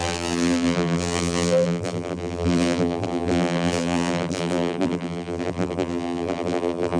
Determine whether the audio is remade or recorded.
remade